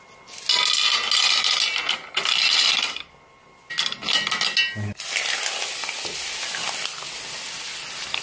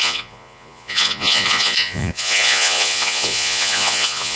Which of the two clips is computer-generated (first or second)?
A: second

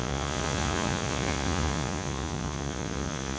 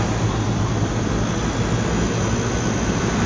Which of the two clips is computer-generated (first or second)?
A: first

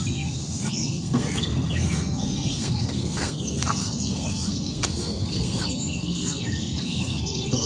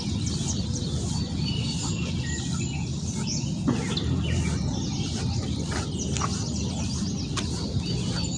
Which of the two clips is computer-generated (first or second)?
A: first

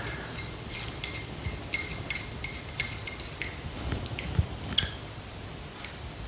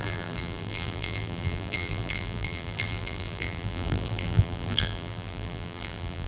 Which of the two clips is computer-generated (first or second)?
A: second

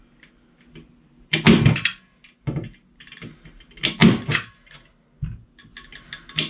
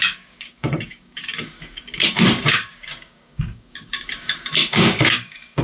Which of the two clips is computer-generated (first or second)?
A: second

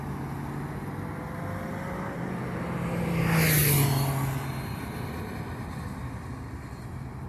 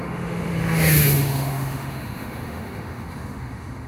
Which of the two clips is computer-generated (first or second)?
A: second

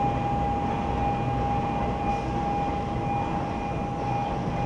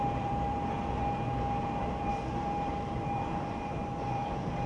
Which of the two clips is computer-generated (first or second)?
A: second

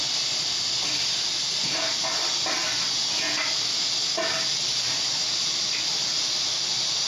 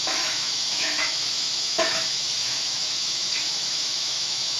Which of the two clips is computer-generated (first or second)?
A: second